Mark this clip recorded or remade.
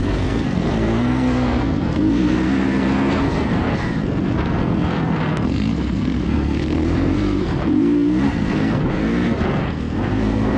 remade